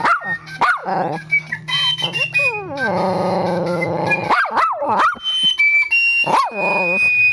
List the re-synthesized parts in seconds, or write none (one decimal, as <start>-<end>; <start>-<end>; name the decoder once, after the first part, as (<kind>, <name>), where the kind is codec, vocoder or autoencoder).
none